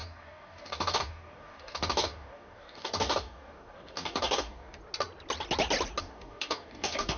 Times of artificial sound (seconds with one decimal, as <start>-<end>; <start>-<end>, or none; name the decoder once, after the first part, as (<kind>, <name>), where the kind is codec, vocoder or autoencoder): 0.0-4.8 (codec, DAC); 6.0-7.2